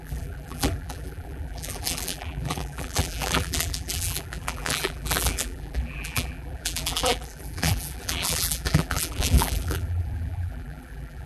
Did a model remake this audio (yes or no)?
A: yes